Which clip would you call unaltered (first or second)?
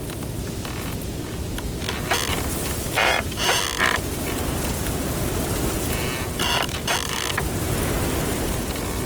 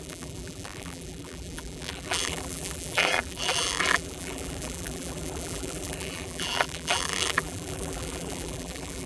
first